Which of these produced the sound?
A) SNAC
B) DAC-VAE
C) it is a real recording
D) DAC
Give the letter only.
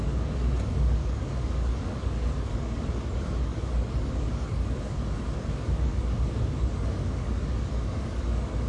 D